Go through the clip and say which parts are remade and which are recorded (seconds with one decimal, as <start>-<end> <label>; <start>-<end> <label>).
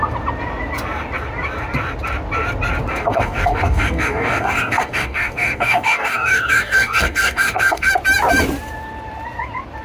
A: 0.0-2.9 recorded; 2.9-7.9 remade; 7.9-9.8 recorded